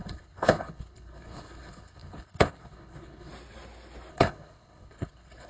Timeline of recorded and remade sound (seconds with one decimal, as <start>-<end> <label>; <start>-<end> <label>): 0.0-3.3 remade; 3.3-4.1 recorded; 4.1-5.5 remade